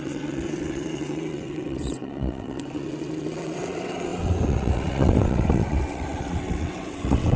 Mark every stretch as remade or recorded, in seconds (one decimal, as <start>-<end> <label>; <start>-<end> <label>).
0.0-7.4 remade